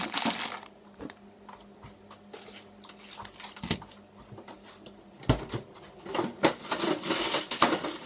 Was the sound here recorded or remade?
recorded